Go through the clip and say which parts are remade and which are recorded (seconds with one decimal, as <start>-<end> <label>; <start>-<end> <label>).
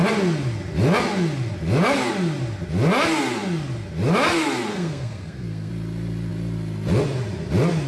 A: 0.0-4.7 recorded; 4.7-5.7 remade; 5.7-7.9 recorded